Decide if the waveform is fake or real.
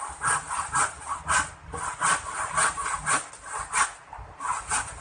real